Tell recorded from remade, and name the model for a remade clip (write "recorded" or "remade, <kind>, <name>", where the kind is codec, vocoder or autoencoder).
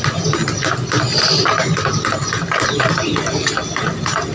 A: remade, vocoder, BigVGAN v2